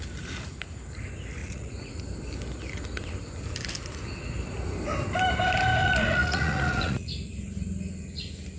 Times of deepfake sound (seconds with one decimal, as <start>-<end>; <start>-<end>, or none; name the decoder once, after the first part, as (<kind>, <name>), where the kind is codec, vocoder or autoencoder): 1.4-2.0 (vocoder, Vocos); 5.8-7.1